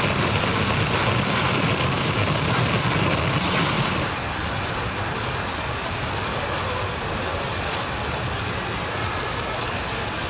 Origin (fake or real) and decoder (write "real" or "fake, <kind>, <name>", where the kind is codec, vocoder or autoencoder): real